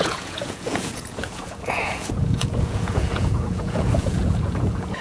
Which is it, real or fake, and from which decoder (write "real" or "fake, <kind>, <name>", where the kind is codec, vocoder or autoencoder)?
fake, vocoder, Vocos